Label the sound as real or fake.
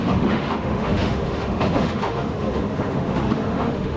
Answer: fake